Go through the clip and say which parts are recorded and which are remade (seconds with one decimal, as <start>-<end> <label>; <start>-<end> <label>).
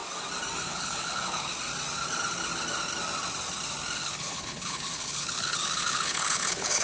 0.0-0.7 recorded; 0.7-1.5 remade; 1.5-4.0 recorded; 4.0-6.8 remade